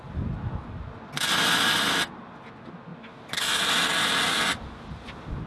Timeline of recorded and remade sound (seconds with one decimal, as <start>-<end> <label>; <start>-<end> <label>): 0.0-5.5 recorded